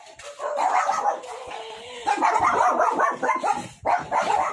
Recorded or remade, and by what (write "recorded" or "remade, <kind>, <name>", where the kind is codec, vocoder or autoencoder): recorded